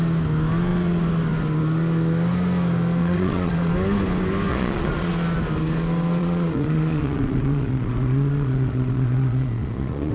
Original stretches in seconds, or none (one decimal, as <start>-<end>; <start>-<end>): 0.0-3.0; 3.7-4.5; 5.1-6.2